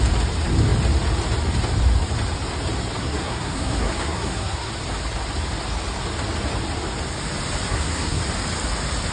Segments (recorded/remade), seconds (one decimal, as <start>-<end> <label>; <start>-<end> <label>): 0.0-3.0 recorded; 3.0-4.7 remade; 4.7-7.7 recorded; 7.7-8.2 remade; 8.2-9.1 recorded